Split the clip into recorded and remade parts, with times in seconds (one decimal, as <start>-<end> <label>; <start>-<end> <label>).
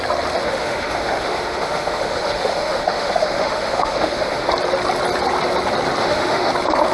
0.0-0.4 recorded; 0.4-4.5 remade; 4.5-6.0 recorded; 6.0-6.5 remade; 6.5-6.9 recorded